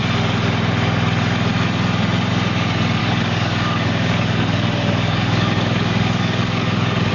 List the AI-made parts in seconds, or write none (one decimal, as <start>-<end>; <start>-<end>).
3.0-7.1